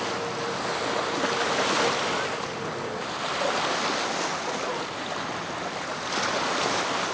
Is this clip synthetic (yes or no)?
no